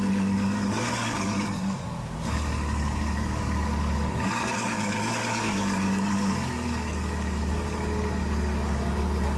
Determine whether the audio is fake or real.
fake